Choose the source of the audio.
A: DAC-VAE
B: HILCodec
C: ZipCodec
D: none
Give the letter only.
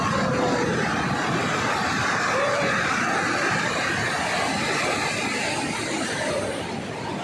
D